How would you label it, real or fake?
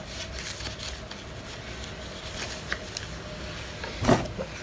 real